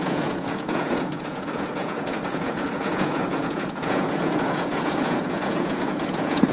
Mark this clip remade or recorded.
remade